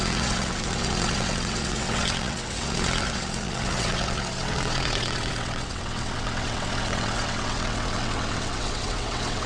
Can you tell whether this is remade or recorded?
remade